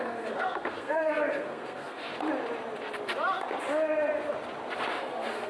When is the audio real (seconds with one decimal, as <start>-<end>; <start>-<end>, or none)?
2.1-5.0